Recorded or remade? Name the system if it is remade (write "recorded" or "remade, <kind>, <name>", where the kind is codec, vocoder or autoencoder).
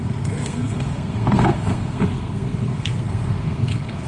remade, codec, SNAC